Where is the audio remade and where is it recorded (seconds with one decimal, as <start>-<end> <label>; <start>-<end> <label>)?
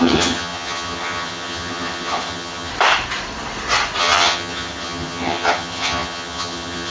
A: 0.0-2.7 remade; 2.7-4.0 recorded; 4.0-6.9 remade